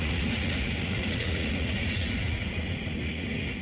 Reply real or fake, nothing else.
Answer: fake